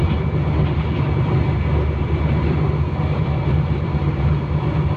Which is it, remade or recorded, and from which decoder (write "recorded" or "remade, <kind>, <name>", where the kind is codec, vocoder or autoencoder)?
remade, vocoder, BigVGAN v2